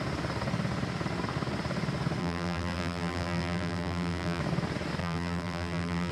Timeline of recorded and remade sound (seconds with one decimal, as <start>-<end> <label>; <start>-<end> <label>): 0.0-2.2 recorded; 2.2-4.4 remade; 4.4-5.0 recorded; 5.0-6.1 remade